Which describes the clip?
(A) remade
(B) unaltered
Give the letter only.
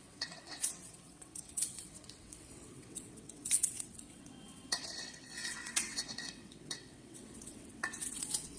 A